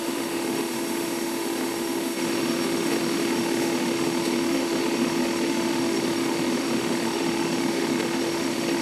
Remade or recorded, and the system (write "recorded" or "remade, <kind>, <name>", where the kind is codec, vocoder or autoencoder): remade, autoencoder, DAC-VAE